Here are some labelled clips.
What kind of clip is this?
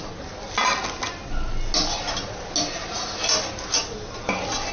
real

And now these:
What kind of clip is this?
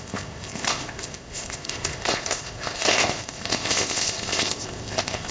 fake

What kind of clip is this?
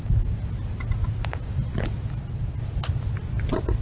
real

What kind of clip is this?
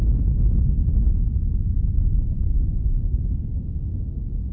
real